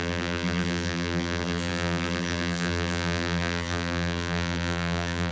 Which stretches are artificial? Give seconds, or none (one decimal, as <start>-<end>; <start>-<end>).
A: 0.0-5.3

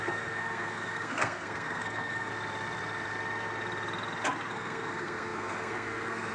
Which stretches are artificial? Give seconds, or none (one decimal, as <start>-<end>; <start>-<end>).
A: 0.0-2.3; 4.5-6.3

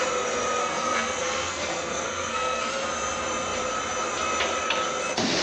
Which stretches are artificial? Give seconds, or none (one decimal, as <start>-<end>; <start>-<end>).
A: 0.6-2.7

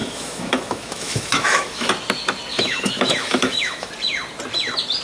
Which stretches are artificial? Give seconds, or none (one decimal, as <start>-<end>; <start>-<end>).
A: 0.0-1.9; 2.5-3.9

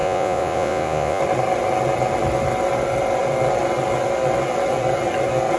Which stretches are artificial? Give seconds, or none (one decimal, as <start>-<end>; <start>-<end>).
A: 0.0-1.2

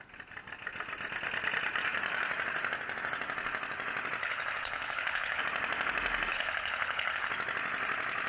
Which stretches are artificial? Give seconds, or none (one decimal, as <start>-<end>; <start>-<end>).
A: 4.2-5.4; 6.3-7.3

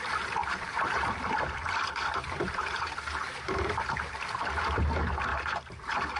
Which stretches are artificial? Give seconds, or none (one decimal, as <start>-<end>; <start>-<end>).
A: 0.4-4.1; 5.3-6.2